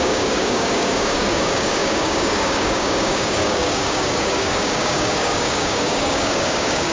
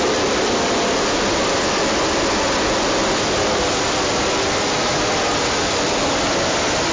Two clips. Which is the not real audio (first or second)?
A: first